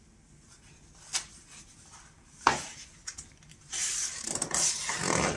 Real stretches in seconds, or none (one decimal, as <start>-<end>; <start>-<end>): 0.0-3.8; 4.4-5.4